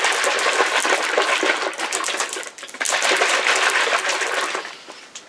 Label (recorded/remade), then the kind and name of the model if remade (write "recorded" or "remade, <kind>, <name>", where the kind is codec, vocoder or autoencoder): recorded